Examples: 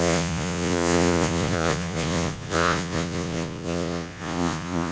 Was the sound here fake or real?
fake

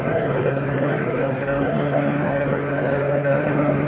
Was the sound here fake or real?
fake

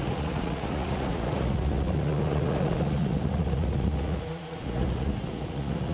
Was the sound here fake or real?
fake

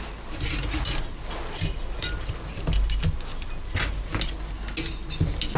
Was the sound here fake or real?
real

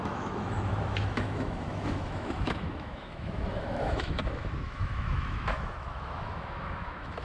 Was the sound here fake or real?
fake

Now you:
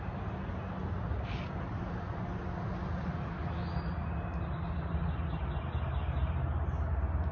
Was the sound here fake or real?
real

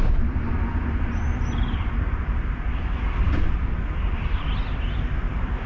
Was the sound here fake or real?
fake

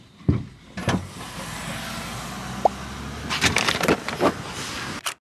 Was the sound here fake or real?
real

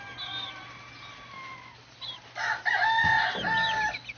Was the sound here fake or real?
real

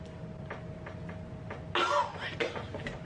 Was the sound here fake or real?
real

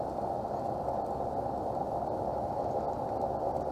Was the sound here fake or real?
real